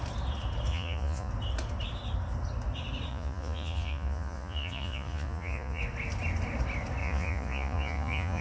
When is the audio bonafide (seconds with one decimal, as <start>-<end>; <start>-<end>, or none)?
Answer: 0.0-0.7; 1.3-3.1; 5.8-7.0